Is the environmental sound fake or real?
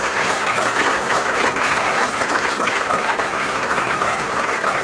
fake